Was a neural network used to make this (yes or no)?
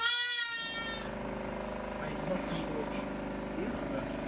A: no